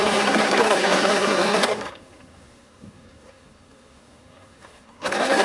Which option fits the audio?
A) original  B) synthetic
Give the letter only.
B